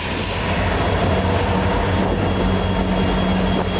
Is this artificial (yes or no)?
no